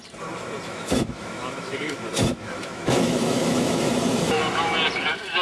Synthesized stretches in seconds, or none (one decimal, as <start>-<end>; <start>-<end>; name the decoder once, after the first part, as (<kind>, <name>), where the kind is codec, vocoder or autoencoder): 0.7-3.9 (autoencoder, DAC-VAE)